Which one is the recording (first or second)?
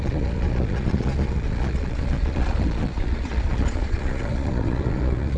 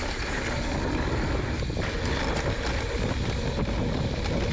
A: second